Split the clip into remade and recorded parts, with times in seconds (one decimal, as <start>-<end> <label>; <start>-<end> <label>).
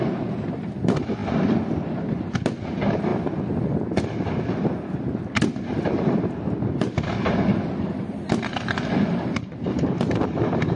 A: 0.0-10.8 recorded